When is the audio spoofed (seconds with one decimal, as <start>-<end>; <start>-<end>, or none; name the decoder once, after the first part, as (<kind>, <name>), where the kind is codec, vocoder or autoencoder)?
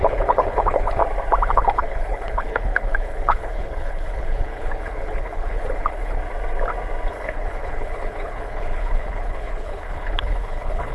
0.0-1.0 (codec, HILCodec); 1.5-6.2; 7.1-10.9